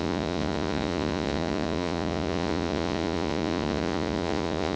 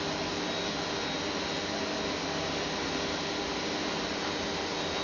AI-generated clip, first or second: first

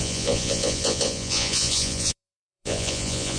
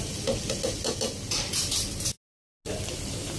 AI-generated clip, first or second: first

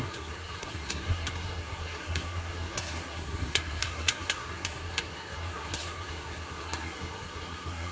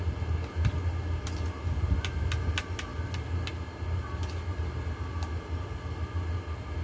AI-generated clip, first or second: first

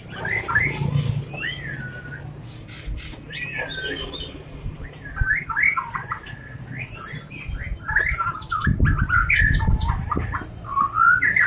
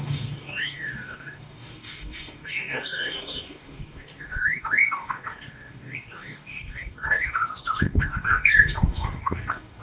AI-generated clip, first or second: second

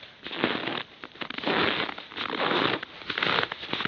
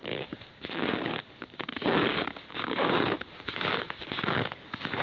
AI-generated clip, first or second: second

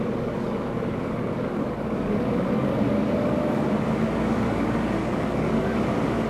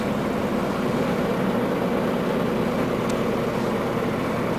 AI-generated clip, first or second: first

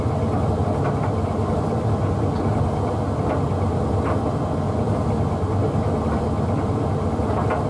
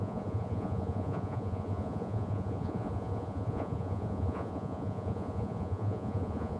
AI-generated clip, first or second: second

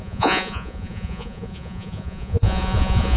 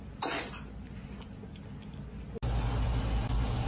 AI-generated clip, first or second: first